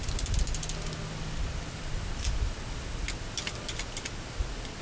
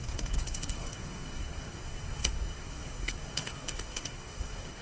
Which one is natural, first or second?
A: first